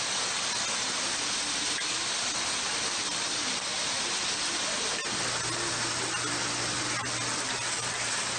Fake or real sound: real